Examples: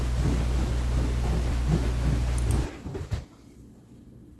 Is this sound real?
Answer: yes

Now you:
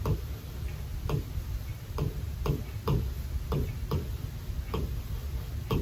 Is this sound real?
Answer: yes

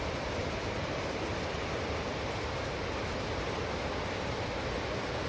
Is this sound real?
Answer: yes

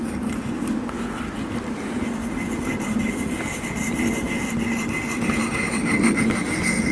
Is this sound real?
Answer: yes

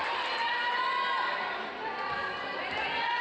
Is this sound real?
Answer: yes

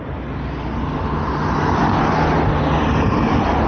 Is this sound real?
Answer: yes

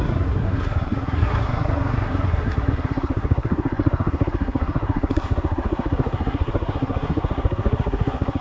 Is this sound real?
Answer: no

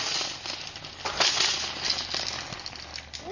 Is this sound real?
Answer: yes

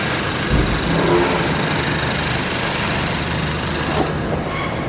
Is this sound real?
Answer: yes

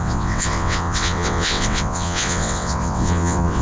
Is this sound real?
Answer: no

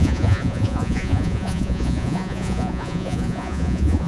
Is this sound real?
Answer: no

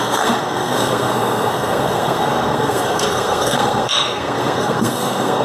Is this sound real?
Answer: no